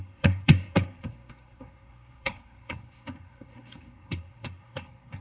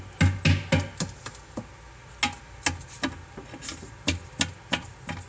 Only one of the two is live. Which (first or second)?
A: second